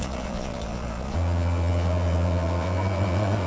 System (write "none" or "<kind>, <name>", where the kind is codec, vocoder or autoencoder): vocoder, Vocos